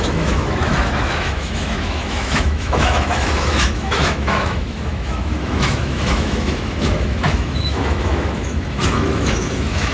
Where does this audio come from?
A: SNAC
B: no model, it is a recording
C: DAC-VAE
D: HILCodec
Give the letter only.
C